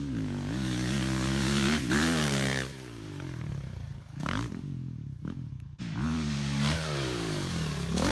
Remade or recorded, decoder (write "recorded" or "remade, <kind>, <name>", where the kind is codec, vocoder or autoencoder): remade, codec, DAC